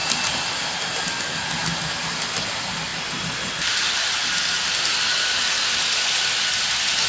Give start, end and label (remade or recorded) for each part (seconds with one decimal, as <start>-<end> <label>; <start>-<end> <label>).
0.0-7.1 recorded